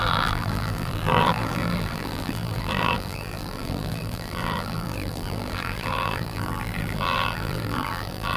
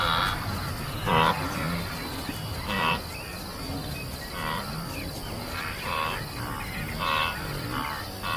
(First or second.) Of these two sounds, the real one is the second